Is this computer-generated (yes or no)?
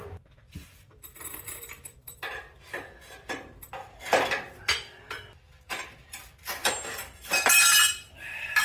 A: yes